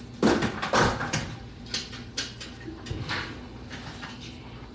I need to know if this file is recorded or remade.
recorded